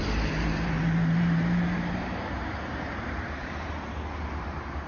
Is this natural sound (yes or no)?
no